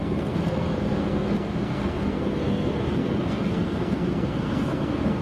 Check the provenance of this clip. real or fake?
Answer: fake